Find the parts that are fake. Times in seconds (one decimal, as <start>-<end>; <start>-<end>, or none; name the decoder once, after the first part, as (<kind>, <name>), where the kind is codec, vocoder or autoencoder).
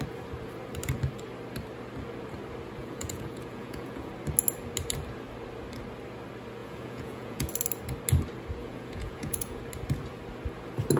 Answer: 2.8-4.1 (vocoder, Vocos); 6.6-7.5; 8.6-9.6